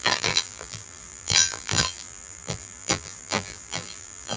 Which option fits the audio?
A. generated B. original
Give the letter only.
A